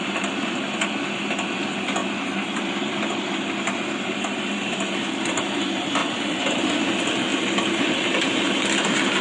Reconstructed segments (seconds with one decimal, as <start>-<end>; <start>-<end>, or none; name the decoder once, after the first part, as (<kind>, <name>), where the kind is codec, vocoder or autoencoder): 0.0-9.2 (vocoder, BigVGAN v2)